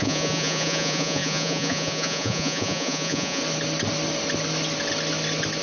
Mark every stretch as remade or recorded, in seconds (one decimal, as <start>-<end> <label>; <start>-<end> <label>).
0.0-3.4 remade; 3.4-5.6 recorded